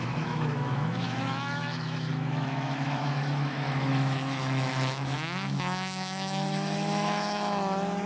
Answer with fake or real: fake